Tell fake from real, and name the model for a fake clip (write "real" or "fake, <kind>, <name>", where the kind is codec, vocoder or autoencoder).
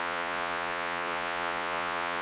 fake, vocoder, Vocos